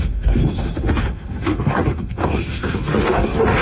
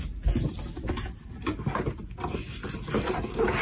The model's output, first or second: first